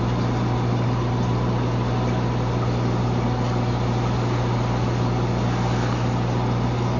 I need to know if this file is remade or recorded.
recorded